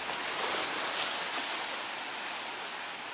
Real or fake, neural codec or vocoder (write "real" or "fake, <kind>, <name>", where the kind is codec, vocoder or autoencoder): real